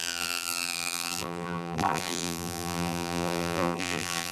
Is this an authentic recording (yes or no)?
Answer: no